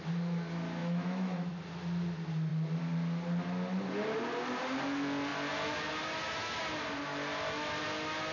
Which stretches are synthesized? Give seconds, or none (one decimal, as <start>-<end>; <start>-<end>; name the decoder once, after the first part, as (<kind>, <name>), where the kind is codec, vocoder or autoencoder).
0.8-1.5 (autoencoder, DAC-VAE)